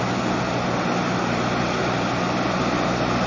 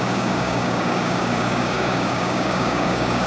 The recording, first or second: first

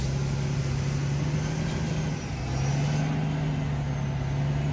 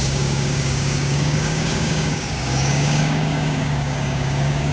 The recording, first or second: first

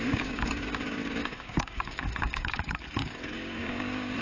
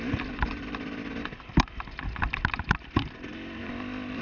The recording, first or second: second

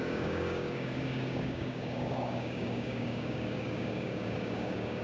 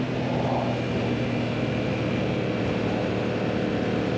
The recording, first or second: second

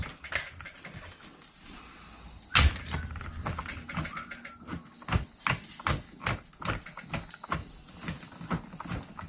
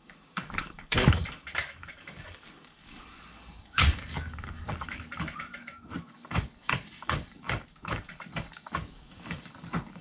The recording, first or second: first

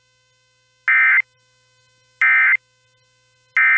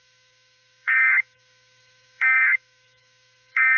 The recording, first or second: first